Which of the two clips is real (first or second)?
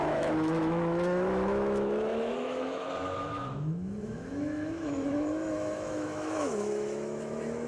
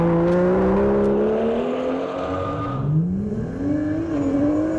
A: second